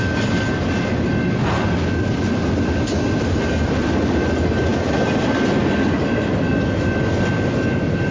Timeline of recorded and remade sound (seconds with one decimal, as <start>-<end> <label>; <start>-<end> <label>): 0.0-8.1 recorded